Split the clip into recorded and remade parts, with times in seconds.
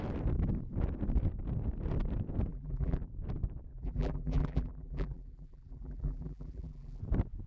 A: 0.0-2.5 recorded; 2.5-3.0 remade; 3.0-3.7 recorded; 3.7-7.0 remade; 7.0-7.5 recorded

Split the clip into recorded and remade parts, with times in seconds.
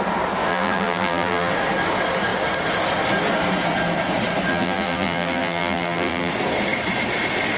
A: 0.0-0.5 recorded; 0.5-1.5 remade; 1.5-4.5 recorded; 4.5-6.3 remade; 6.3-7.6 recorded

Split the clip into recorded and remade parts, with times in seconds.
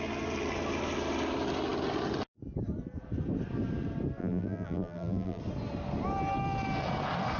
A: 0.0-4.2 recorded; 4.2-5.4 remade; 5.4-7.4 recorded